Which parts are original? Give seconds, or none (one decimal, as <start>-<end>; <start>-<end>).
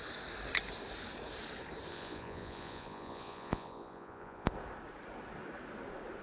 0.0-1.9; 4.5-6.2